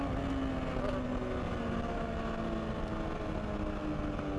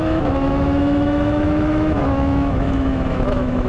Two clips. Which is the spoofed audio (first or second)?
second